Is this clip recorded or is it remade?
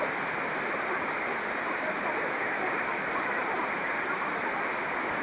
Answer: recorded